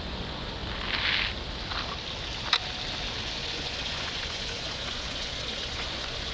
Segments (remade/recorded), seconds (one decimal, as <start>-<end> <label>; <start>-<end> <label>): 0.0-0.6 remade; 0.6-3.2 recorded; 3.2-6.3 remade